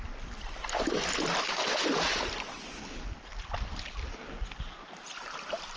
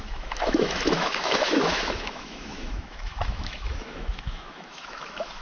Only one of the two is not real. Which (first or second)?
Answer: second